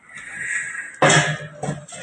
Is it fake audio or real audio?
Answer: real